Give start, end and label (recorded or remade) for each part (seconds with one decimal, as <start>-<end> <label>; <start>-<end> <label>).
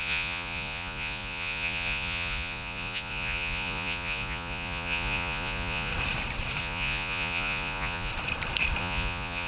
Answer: 0.0-5.9 remade; 5.9-6.6 recorded; 6.6-8.1 remade; 8.1-8.8 recorded; 8.8-9.5 remade